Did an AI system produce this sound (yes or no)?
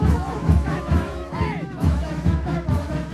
yes